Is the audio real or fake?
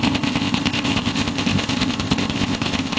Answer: fake